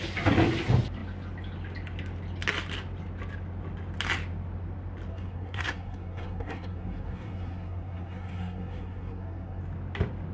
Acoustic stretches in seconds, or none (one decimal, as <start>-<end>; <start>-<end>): 0.0-5.1; 9.6-10.3